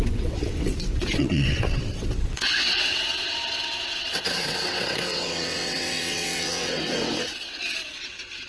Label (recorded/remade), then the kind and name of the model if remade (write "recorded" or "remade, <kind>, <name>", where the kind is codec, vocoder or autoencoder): remade, vocoder, WaveNeXt